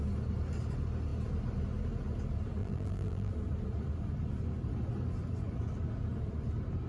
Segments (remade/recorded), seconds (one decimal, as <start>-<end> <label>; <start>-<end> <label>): 0.0-2.6 recorded; 2.6-3.3 remade; 3.3-6.9 recorded